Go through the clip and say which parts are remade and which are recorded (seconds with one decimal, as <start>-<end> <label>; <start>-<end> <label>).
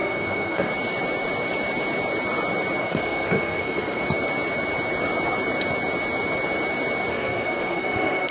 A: 0.0-0.7 remade; 0.7-2.8 recorded; 2.8-4.0 remade; 4.0-7.1 recorded; 7.1-8.3 remade